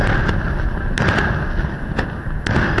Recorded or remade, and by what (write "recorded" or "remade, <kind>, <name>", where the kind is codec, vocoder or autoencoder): recorded